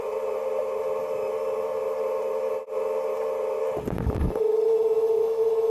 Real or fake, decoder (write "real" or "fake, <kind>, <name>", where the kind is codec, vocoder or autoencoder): real